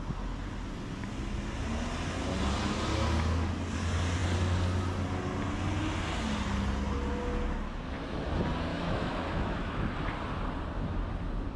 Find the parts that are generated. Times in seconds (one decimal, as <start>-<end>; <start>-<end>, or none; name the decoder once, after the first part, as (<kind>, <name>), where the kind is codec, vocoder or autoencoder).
8.7-9.8 (autoencoder, DAC-VAE)

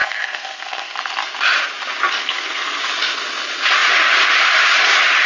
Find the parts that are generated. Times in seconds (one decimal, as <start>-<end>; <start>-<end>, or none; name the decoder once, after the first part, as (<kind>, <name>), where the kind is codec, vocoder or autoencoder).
0.0-1.0 (codec, SNAC); 2.2-2.8

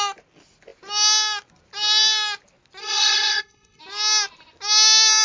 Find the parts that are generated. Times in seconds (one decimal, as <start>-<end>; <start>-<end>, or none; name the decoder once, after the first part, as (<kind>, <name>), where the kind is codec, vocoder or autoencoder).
2.8-3.8 (codec, SNAC)

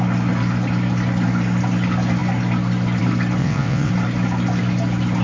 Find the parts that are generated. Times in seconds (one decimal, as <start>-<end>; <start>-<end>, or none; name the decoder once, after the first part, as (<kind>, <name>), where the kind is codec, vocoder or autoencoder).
3.4-3.9 (vocoder, WaveNeXt)

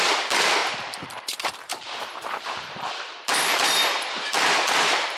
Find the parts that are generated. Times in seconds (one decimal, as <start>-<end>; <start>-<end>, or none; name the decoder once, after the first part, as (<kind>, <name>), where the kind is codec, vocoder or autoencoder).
0.0-5.2 (vocoder, BigVGAN v2)